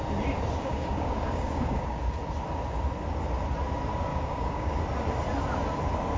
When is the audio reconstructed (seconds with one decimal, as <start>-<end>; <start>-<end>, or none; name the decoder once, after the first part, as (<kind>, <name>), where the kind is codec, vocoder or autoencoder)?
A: 0.6-2.0 (codec, DAC); 4.1-4.8